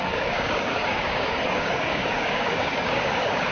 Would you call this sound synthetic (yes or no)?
yes